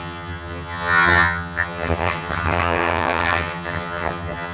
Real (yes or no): no